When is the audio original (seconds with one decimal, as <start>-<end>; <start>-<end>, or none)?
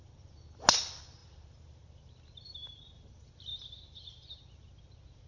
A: 0.0-1.2; 3.1-3.5; 4.4-5.3